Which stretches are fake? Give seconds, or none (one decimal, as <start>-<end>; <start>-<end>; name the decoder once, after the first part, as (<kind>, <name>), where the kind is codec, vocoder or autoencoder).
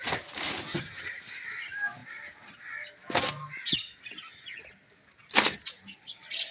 0.7-1.2 (vocoder, HiFi-GAN)